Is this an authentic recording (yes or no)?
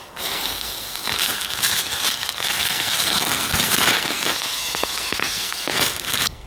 no